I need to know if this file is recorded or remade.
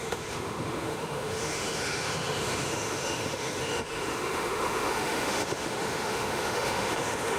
remade